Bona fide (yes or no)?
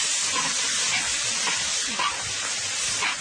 yes